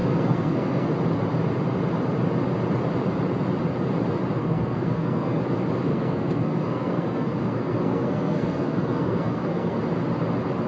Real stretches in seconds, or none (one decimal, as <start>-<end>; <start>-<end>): 0.9-4.4; 5.4-5.9; 9.8-10.7